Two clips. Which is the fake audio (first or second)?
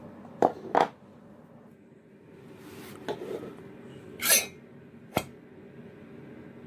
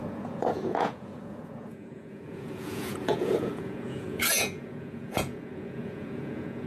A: second